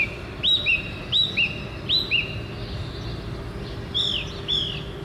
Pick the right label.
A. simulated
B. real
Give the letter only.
B